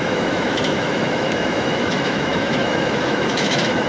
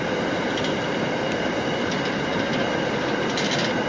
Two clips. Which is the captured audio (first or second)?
second